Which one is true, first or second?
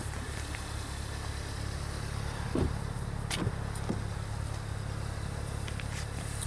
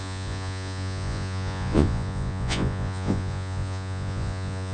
first